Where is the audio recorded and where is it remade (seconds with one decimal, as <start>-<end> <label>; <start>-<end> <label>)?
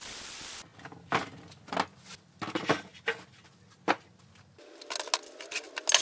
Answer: 0.0-6.0 recorded